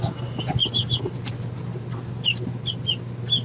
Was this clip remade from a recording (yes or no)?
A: no